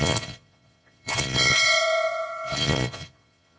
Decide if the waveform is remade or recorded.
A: remade